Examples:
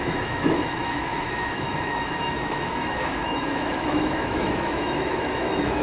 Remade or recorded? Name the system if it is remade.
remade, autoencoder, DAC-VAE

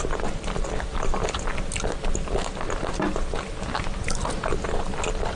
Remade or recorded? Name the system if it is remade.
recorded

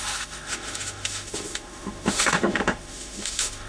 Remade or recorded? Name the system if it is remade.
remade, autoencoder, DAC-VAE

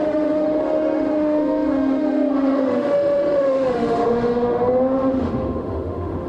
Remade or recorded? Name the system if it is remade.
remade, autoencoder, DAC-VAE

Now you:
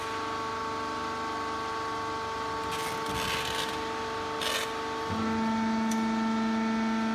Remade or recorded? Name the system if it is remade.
recorded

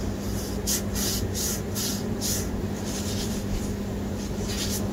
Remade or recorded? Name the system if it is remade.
recorded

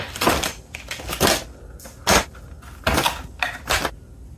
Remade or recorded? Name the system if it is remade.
recorded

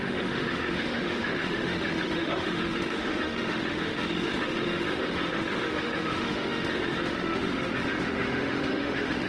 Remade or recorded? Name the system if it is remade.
remade, autoencoder, DAC-VAE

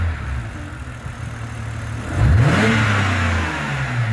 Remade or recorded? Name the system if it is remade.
recorded